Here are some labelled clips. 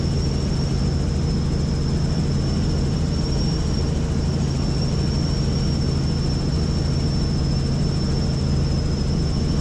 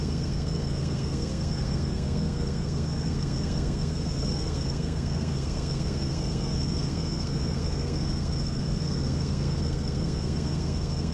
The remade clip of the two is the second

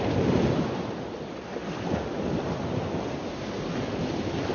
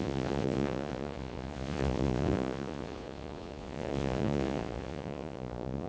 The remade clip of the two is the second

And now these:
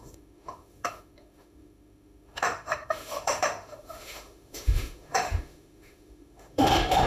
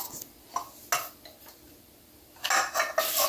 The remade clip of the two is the first